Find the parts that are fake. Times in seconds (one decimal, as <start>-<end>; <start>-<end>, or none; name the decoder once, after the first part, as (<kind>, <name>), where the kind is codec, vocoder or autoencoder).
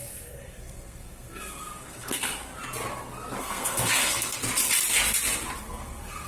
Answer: 0.0-2.5 (codec, SNAC); 3.4-4.4; 5.6-6.3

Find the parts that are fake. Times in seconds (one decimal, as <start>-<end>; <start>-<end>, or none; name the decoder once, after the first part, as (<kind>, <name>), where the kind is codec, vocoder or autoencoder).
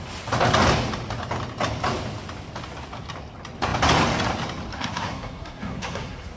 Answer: 4.7-6.4 (codec, SNAC)